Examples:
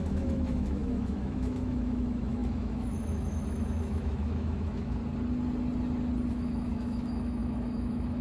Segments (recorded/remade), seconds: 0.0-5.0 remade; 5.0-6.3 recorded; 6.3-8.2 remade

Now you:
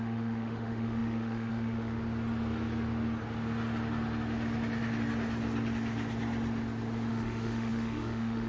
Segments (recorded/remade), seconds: 0.0-2.0 remade; 2.0-7.1 recorded; 7.1-8.5 remade